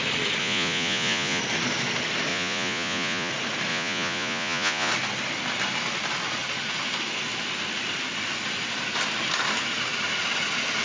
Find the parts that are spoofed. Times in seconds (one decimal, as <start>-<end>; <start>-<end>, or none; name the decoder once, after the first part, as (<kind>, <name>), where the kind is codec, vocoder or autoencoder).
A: 0.4-1.4 (vocoder, Vocos); 2.3-3.3; 3.7-4.9